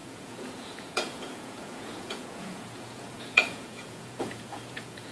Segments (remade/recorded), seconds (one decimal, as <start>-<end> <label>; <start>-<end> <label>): 0.0-5.1 remade